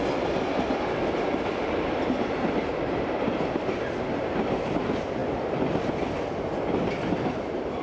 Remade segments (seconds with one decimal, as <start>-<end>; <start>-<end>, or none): none